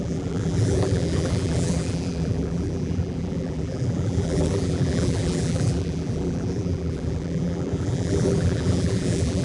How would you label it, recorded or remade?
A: remade